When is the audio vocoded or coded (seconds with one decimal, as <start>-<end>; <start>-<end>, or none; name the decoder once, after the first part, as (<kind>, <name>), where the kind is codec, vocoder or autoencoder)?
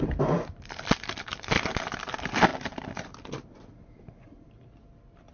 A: 0.0-1.3 (vocoder, BigVGAN v2); 1.9-5.3